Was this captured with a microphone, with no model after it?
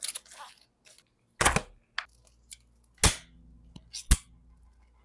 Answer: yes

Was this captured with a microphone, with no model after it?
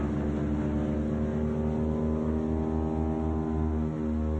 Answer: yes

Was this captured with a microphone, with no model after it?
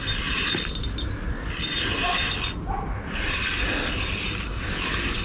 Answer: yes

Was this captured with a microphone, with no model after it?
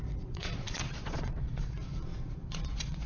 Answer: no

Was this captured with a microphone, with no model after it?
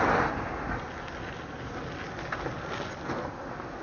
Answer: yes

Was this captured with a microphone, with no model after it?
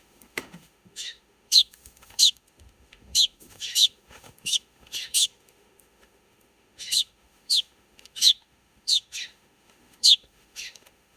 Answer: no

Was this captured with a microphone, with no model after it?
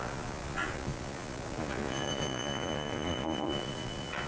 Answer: no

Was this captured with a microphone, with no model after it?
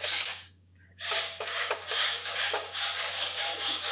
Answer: no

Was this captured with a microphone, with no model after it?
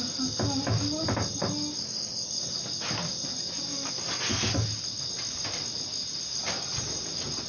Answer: yes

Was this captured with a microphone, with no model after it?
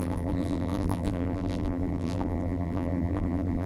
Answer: no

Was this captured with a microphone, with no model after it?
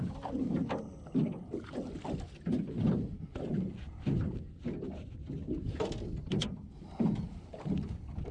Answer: yes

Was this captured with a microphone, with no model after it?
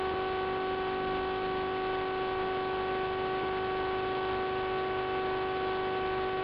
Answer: yes